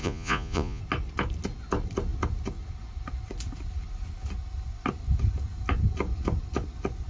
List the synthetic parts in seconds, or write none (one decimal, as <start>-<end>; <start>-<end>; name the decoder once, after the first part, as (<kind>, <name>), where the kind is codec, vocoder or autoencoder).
0.0-0.8 (vocoder, Vocos)